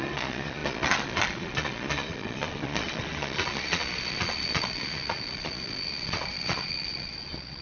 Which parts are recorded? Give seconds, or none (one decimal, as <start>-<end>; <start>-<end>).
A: none